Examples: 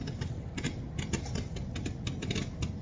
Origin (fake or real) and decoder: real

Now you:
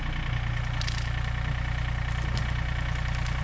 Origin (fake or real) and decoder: real